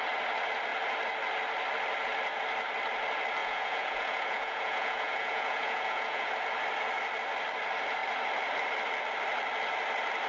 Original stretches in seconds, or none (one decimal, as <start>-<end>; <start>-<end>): 0.0-3.4; 6.3-10.3